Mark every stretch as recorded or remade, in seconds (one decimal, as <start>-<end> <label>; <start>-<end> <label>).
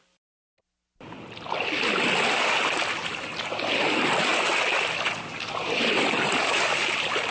0.0-7.3 recorded